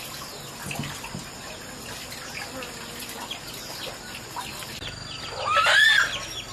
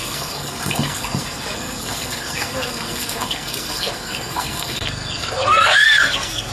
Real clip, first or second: first